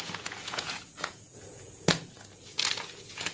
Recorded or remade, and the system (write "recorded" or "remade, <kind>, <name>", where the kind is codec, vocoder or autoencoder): remade, vocoder, Vocos